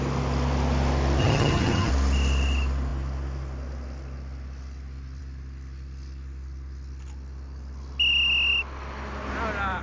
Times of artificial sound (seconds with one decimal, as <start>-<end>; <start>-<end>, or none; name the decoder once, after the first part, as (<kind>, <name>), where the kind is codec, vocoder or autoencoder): 1.2-1.9 (vocoder, HiFi-GAN)